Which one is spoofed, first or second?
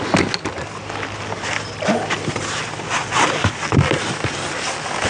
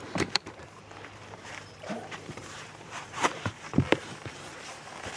second